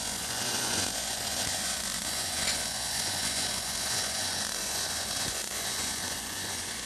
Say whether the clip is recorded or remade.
remade